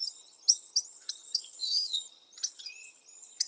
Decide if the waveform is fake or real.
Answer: fake